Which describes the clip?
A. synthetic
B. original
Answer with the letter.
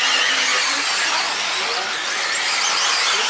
B